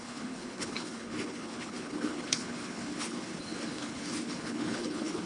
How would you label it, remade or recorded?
remade